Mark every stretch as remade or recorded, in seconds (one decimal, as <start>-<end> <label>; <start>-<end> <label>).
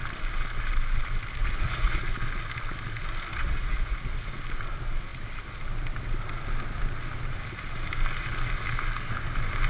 0.0-1.4 recorded; 1.4-2.0 remade; 2.0-3.3 recorded; 3.3-4.3 remade; 4.3-9.7 recorded